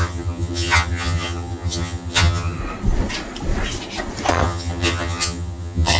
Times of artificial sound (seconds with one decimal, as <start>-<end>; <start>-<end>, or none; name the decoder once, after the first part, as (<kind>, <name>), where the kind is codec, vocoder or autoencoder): 0.0-2.6 (vocoder, HiFi-GAN); 4.3-6.0